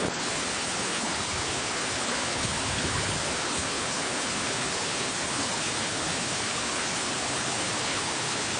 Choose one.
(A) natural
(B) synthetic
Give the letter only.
B